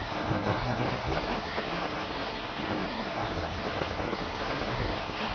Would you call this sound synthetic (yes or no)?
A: yes